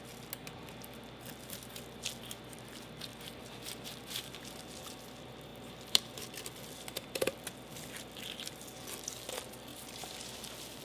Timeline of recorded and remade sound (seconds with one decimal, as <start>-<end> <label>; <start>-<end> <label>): 0.0-10.8 recorded